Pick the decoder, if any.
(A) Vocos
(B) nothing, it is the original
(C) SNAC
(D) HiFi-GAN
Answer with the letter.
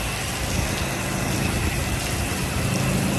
B